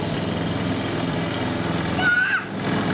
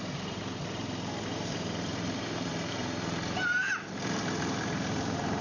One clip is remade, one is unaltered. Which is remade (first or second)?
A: second